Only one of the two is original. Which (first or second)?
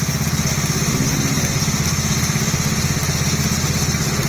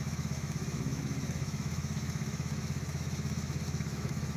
first